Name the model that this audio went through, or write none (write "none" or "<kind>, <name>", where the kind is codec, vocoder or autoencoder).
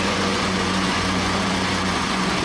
vocoder, Vocos